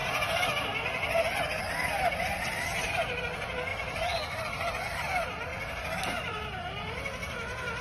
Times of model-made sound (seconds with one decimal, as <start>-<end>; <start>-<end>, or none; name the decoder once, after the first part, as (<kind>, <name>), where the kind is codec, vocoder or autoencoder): 3.7-4.8 (vocoder, BigVGAN v2); 5.5-6.4